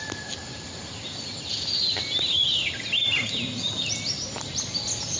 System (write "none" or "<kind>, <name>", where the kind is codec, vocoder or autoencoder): none